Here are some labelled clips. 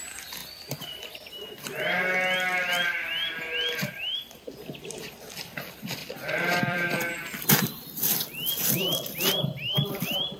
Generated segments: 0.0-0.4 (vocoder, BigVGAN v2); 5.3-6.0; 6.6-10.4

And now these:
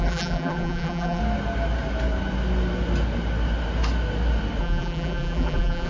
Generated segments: 0.0-1.2 (vocoder, BigVGAN v2); 4.6-5.9

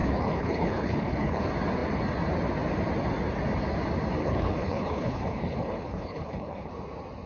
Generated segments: 0.0-1.4 (codec, HILCodec); 4.2-6.7

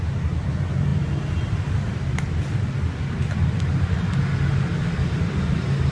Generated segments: none

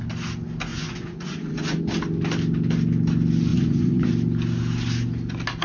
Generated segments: 0.7-1.8 (vocoder, Vocos); 3.5-4.1

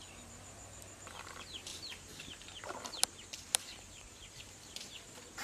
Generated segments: 1.7-4.9 (vocoder, BigVGAN v2)

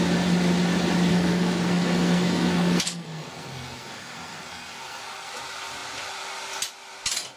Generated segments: 1.1-5.3 (codec, SNAC)

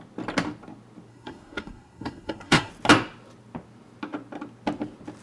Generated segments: 1.1-2.7 (codec, SNAC)